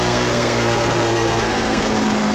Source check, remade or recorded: remade